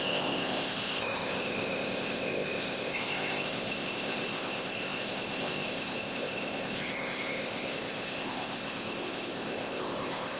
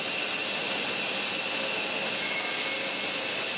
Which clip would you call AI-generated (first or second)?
first